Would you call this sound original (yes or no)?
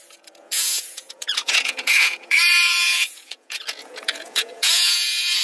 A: no